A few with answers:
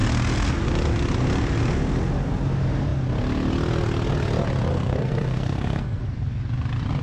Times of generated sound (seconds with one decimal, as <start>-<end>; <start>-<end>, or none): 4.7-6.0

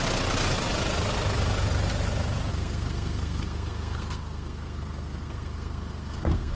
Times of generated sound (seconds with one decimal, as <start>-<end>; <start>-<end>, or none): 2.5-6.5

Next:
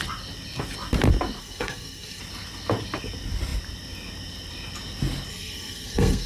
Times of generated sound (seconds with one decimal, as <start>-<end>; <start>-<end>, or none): 1.4-2.2; 5.3-6.3

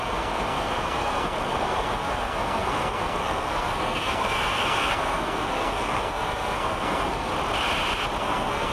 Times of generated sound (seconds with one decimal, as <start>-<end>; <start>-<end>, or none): 0.0-7.3; 8.2-8.7

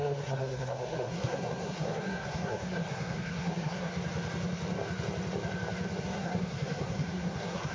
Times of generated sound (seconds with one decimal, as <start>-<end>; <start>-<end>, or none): 0.0-3.9; 6.0-7.7

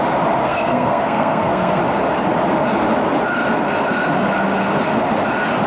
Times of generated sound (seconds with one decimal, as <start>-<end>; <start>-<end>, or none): 0.4-1.8

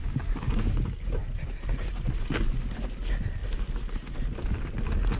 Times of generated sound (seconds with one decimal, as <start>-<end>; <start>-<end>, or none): none

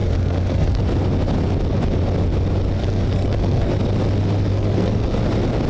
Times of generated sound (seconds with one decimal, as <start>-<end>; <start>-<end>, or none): 0.0-0.8; 2.8-3.7; 4.5-5.2